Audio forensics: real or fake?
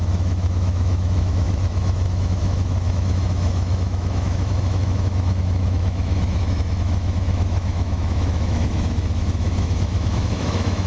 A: fake